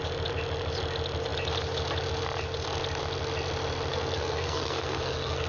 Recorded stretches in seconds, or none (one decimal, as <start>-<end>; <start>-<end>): 0.0-3.9